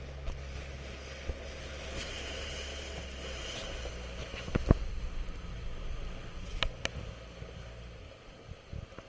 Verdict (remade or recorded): recorded